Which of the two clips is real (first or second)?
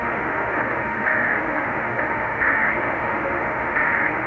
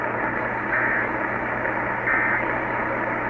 second